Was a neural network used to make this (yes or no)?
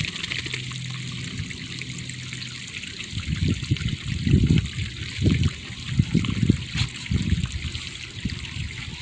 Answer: no